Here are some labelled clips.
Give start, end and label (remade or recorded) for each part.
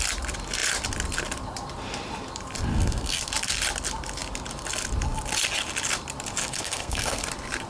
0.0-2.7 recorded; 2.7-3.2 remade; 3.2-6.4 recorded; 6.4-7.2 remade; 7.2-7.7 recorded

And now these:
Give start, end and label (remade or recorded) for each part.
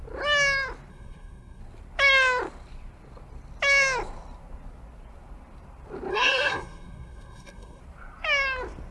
0.0-0.9 recorded; 0.9-1.6 remade; 1.6-6.1 recorded; 6.1-7.8 remade; 7.8-8.9 recorded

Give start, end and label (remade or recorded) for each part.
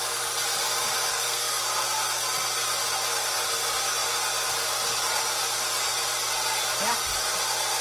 0.0-1.1 recorded; 1.1-1.6 remade; 1.6-7.8 recorded